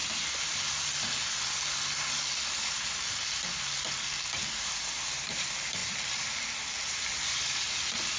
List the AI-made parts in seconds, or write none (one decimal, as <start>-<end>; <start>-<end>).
none